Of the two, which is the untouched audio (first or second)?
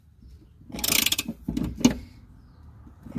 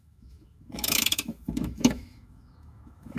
first